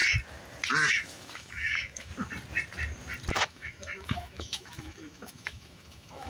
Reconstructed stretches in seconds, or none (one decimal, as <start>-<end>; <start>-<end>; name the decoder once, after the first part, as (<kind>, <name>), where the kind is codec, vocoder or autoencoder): 0.9-2.1 (autoencoder, DAC-VAE); 3.3-6.3